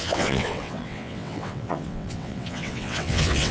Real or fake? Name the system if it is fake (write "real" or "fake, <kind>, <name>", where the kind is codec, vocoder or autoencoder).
fake, vocoder, WaveNeXt